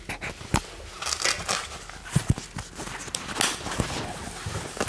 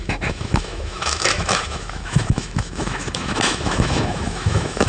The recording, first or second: first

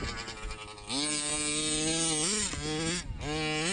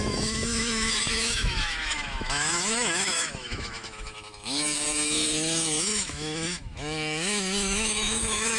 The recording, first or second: first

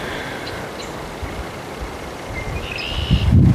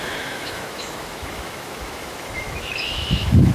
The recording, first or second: first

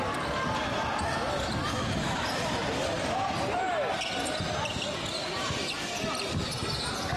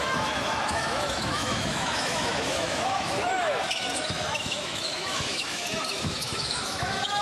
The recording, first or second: first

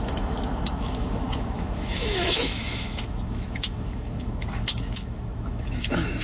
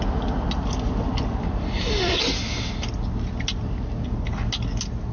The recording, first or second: second